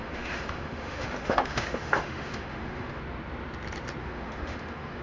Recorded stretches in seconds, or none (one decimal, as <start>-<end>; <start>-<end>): 3.0-4.0